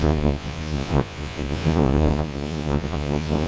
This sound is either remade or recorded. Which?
remade